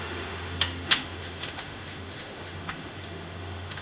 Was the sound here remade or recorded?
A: remade